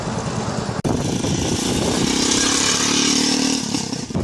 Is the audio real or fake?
real